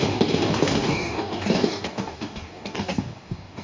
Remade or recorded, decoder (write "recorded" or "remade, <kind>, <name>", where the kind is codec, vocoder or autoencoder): remade, codec, DAC